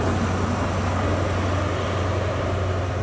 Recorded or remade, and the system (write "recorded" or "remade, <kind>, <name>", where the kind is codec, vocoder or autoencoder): recorded